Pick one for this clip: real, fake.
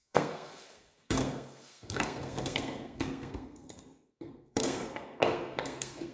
fake